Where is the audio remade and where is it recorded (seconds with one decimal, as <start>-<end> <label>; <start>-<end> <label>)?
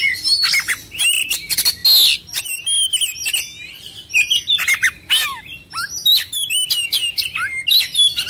0.0-8.3 recorded